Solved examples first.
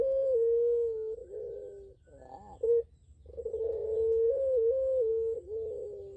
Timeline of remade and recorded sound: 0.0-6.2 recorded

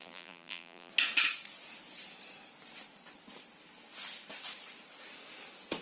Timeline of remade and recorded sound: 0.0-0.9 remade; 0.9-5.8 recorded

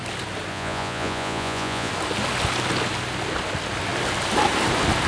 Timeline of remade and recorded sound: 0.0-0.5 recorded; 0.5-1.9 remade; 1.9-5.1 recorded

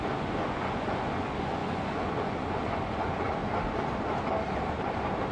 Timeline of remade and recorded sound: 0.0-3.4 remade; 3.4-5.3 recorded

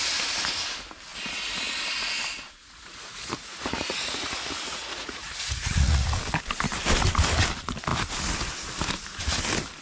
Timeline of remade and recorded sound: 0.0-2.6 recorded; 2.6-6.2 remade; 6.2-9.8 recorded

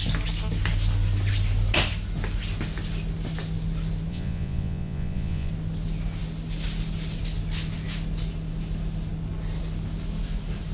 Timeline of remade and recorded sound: 0.0-4.1 recorded; 4.1-5.5 remade; 5.5-10.7 recorded

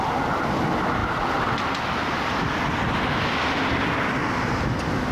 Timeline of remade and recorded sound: 0.0-5.1 recorded